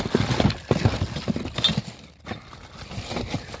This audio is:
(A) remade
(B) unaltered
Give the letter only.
B